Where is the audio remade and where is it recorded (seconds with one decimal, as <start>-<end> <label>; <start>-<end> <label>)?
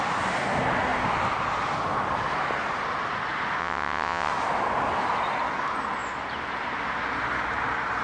0.0-3.6 recorded; 3.6-4.3 remade; 4.3-8.0 recorded